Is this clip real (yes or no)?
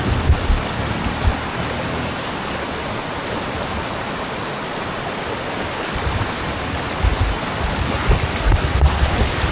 yes